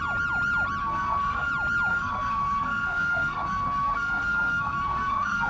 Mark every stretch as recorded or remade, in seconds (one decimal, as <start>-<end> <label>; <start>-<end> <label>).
0.0-0.8 recorded; 0.8-1.5 remade; 1.5-1.9 recorded; 1.9-5.5 remade